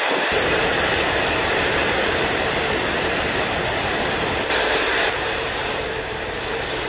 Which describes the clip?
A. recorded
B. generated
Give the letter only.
B